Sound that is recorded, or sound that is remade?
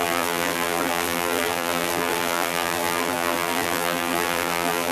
remade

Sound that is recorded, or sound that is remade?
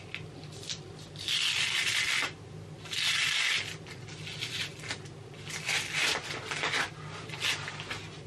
recorded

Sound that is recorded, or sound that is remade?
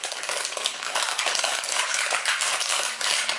remade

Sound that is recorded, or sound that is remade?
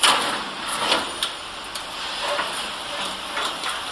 recorded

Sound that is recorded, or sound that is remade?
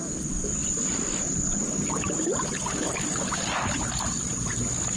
recorded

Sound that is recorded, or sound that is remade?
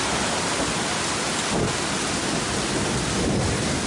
recorded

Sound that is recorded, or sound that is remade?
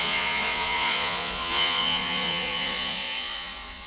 remade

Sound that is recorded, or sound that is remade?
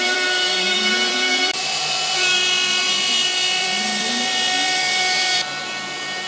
remade